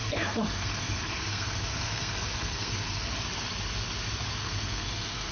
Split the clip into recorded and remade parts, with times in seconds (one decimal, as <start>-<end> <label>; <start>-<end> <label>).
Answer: 0.0-3.2 remade; 3.2-4.4 recorded; 4.4-5.3 remade

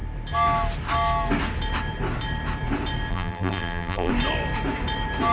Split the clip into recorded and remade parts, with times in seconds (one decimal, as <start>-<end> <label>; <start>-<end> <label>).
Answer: 0.0-3.1 recorded; 3.1-4.1 remade; 4.1-5.3 recorded

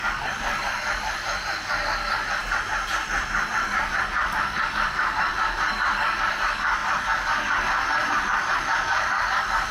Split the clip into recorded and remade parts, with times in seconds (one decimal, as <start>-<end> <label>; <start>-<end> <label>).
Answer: 0.0-2.4 remade; 2.4-3.5 recorded; 3.5-9.7 remade

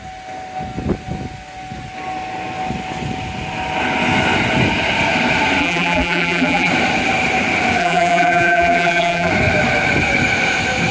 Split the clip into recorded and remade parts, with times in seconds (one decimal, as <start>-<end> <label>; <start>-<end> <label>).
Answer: 0.0-5.6 recorded; 5.6-6.7 remade; 6.7-7.8 recorded; 7.8-9.3 remade; 9.3-10.9 recorded